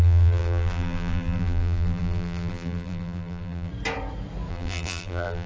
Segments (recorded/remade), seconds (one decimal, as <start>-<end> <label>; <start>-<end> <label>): 0.0-3.7 remade; 3.7-4.5 recorded; 4.5-5.5 remade